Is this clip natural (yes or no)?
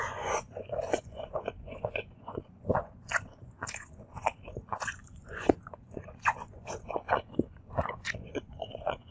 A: no